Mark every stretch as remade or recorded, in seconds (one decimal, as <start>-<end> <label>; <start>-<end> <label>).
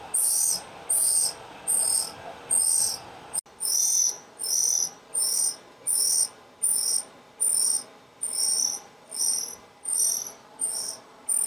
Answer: 0.0-2.8 recorded; 2.8-3.4 remade; 3.4-8.6 recorded; 8.6-11.1 remade; 11.1-11.5 recorded